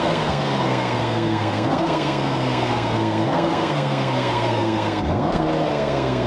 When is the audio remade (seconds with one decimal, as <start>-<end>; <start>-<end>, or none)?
0.0-6.3